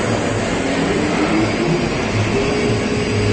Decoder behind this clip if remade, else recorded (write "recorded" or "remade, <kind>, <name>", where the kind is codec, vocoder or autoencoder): recorded